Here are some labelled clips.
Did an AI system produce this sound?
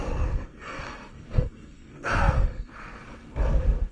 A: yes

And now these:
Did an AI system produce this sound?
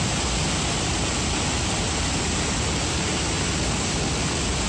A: no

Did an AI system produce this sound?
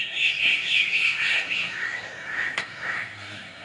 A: yes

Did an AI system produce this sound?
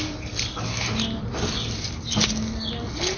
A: no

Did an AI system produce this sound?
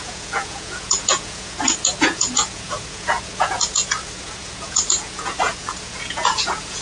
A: yes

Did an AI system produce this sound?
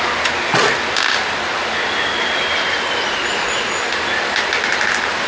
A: no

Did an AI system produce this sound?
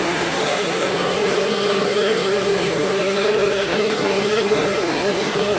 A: yes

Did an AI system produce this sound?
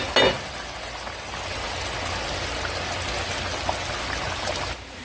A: no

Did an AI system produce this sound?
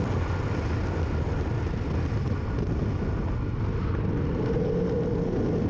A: no